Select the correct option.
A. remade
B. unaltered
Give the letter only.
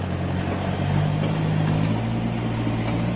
B